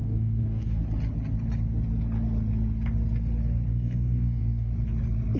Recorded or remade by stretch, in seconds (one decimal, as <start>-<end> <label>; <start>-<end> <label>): 0.0-0.8 remade; 0.8-3.7 recorded; 3.7-4.7 remade; 4.7-5.4 recorded